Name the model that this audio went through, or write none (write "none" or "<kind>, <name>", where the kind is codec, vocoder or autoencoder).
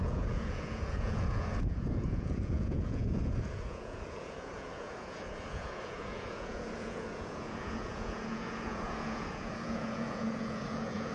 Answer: vocoder, Vocos